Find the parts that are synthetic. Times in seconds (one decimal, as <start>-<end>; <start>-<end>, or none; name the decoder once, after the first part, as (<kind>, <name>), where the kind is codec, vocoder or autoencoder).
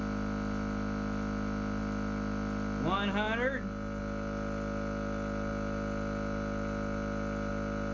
none